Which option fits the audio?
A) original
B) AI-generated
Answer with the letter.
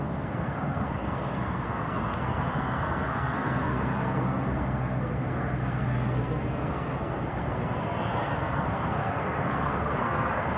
B